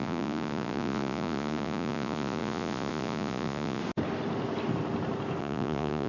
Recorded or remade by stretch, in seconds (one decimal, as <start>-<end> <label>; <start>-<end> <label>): 0.0-3.8 remade; 3.8-5.4 recorded; 5.4-6.1 remade